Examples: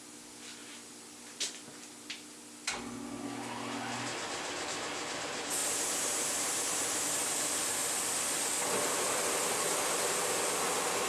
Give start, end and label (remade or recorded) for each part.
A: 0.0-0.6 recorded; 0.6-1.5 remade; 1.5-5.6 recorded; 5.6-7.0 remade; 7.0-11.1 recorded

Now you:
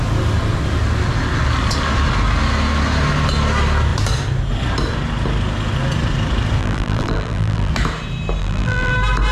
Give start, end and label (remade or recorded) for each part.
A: 0.0-6.6 recorded; 6.6-7.7 remade; 7.7-8.4 recorded; 8.4-8.9 remade; 8.9-9.3 recorded

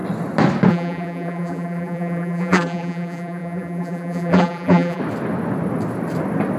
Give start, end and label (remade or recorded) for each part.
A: 0.0-0.7 recorded; 0.7-5.0 remade; 5.0-6.6 recorded

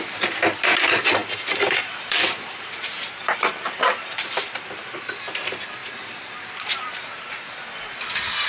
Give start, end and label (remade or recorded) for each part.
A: 0.0-1.2 recorded; 1.2-5.0 remade; 5.0-8.5 recorded

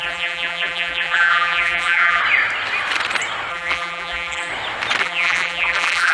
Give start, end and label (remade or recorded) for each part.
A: 0.0-2.2 remade; 2.2-3.5 recorded; 3.5-4.5 remade; 4.5-5.0 recorded; 5.0-6.1 remade

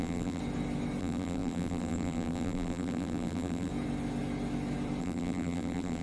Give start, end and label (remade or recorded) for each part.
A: 0.0-0.4 remade; 0.4-1.0 recorded; 1.0-3.7 remade; 3.7-5.0 recorded; 5.0-6.0 remade

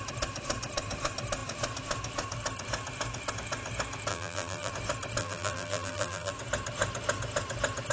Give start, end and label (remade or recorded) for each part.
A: 0.0-4.1 recorded; 4.1-4.7 remade; 4.7-5.2 recorded; 5.2-6.3 remade; 6.3-7.9 recorded